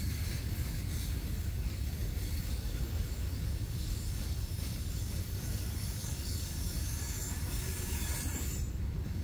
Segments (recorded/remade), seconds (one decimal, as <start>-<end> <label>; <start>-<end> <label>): 0.0-8.1 remade; 8.1-8.7 recorded; 8.7-9.2 remade